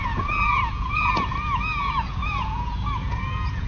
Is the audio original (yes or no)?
no